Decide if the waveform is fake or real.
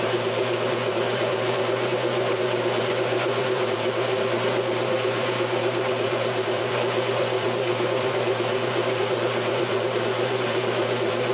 fake